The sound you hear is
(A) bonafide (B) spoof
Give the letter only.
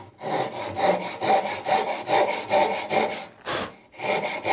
A